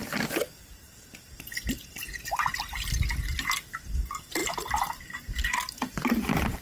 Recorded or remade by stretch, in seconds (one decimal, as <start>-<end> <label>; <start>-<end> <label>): 0.0-4.4 recorded; 4.4-6.6 remade